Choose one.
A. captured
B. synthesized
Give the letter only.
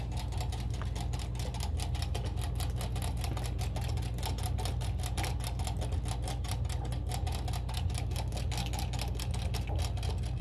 A